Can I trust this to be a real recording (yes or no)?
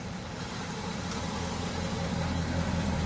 no